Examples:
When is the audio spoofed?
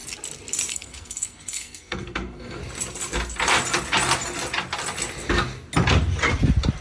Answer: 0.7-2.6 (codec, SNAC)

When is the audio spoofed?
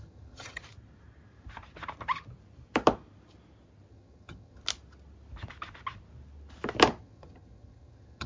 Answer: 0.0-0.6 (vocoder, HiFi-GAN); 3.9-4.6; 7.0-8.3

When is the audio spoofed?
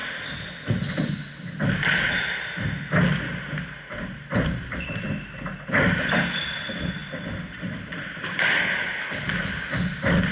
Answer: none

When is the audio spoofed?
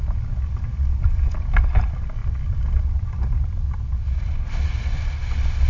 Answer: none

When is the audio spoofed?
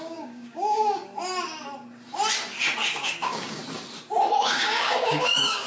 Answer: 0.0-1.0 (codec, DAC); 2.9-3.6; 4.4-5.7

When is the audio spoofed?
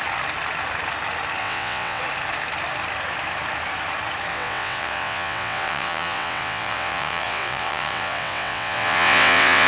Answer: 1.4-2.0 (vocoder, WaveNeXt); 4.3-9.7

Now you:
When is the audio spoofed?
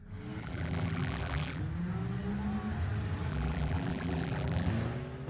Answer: 0.4-1.6 (vocoder, BigVGAN v2); 3.3-4.7